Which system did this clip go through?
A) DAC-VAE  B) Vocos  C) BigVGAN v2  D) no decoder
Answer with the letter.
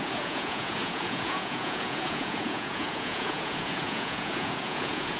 B